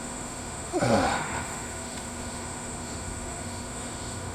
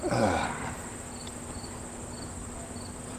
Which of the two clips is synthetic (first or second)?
first